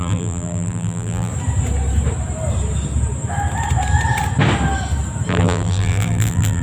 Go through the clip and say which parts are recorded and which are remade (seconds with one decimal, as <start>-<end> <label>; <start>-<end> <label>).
0.0-1.3 remade; 1.3-5.3 recorded; 5.3-6.6 remade